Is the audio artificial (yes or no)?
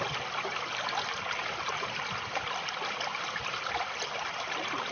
no